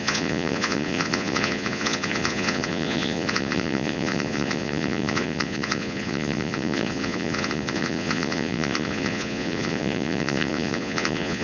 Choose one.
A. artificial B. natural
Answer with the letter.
A